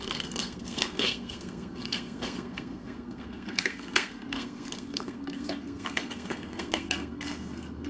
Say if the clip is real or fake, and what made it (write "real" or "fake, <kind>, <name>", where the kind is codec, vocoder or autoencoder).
fake, codec, SNAC